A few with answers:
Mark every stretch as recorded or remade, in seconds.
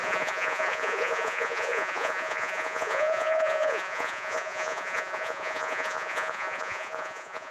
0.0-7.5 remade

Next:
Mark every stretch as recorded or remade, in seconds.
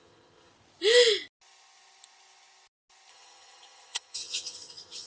0.0-0.5 remade; 0.5-3.1 recorded; 3.1-5.1 remade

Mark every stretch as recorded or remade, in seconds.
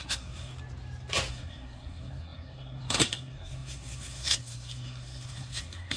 0.0-0.5 remade; 0.5-1.3 recorded; 1.3-6.0 remade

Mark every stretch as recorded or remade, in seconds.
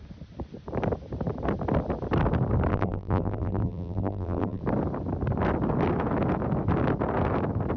0.0-2.7 recorded; 2.7-4.6 remade; 4.6-7.8 recorded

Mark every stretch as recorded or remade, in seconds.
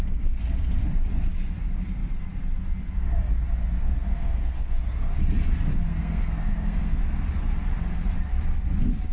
0.0-3.7 recorded; 3.7-5.1 remade; 5.1-5.9 recorded; 5.9-7.0 remade; 7.0-9.1 recorded